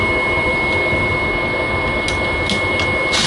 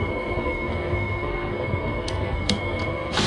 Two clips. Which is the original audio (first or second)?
first